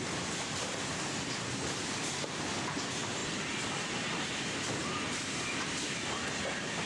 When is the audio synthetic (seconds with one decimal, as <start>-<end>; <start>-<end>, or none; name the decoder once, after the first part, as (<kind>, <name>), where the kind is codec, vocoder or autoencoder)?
none